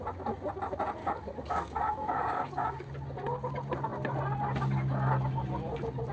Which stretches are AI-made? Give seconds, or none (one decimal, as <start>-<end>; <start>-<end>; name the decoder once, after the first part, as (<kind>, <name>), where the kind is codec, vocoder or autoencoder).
1.0-2.9 (codec, DAC)